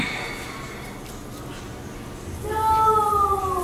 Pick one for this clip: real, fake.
real